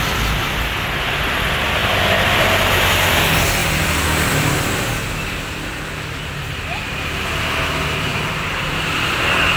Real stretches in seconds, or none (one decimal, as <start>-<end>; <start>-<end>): 0.0-3.6; 4.8-8.1